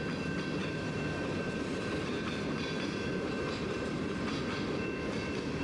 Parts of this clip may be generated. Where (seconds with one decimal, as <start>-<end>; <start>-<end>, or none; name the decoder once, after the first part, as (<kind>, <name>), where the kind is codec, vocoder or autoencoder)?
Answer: 0.6-4.0 (vocoder, BigVGAN v2)